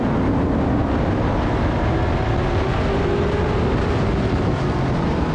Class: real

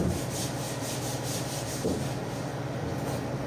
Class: fake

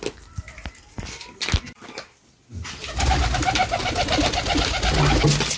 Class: real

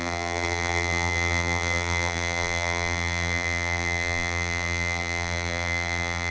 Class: fake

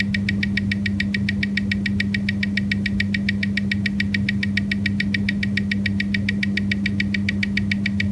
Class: real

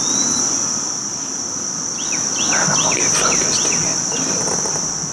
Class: real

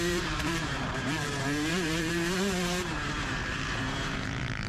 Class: fake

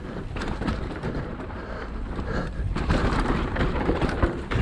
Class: fake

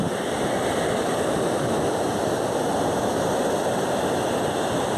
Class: real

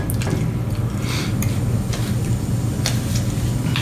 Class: real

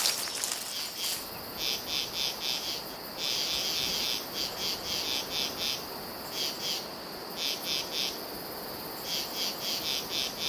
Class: real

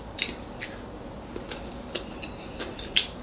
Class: real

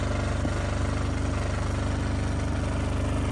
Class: real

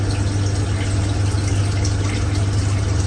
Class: real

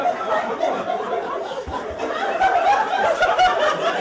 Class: fake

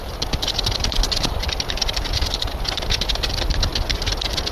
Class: fake